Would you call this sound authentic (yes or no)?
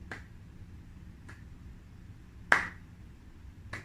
yes